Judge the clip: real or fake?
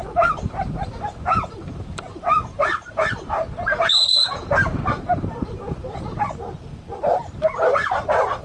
fake